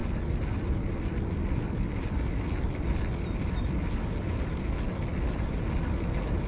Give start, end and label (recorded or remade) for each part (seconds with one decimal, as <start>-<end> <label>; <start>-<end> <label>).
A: 0.0-6.5 recorded